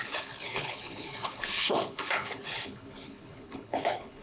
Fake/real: fake